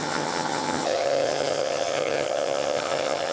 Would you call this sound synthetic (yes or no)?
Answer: yes